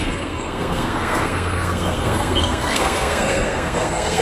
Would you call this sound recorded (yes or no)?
no